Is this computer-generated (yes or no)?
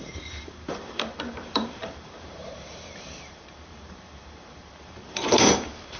yes